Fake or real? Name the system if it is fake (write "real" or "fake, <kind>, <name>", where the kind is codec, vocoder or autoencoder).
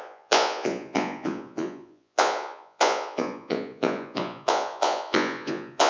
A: fake, vocoder, Vocos